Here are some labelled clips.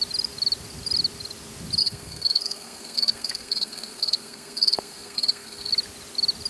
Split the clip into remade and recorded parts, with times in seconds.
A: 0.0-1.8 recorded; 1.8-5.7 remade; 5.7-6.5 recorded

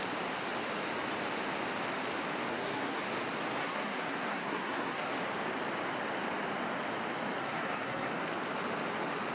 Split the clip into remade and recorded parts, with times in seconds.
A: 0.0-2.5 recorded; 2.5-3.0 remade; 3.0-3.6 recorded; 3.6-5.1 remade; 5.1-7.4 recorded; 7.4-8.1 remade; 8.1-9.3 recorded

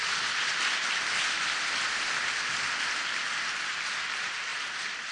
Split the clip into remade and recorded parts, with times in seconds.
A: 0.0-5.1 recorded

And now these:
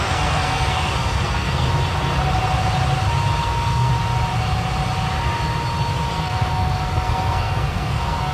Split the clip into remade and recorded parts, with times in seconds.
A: 0.0-1.7 remade; 1.7-3.4 recorded; 3.4-3.9 remade; 3.9-6.1 recorded; 6.1-8.3 remade

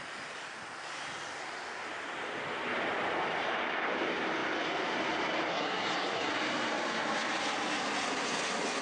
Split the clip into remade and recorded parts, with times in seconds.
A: 0.0-5.5 recorded; 5.5-6.3 remade; 6.3-8.8 recorded

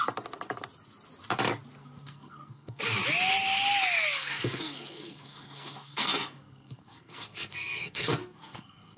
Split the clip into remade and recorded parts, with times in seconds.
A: 0.0-1.8 recorded; 1.8-2.8 remade; 2.8-4.2 recorded; 4.2-9.0 remade